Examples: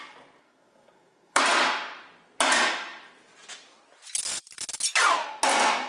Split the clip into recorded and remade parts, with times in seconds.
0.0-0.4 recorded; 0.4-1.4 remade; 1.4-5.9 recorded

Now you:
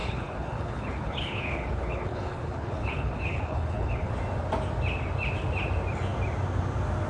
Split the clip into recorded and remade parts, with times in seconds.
0.0-4.1 remade; 4.1-7.1 recorded

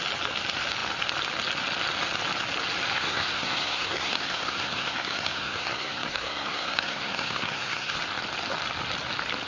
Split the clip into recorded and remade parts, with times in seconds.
0.0-2.9 recorded; 2.9-8.0 remade; 8.0-9.5 recorded

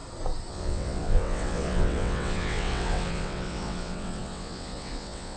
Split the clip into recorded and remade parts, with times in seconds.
0.0-0.5 recorded; 0.5-5.4 remade

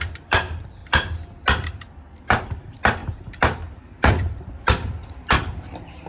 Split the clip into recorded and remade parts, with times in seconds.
0.0-0.8 remade; 0.8-2.2 recorded; 2.2-6.1 remade

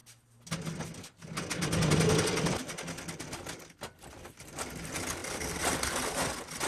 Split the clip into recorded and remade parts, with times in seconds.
0.0-4.0 recorded; 4.0-6.7 remade